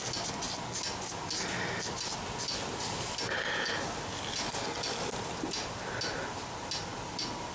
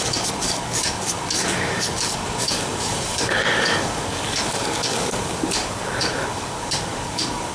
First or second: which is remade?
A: second